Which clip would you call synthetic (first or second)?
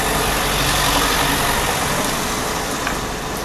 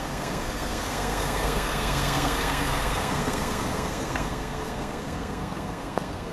second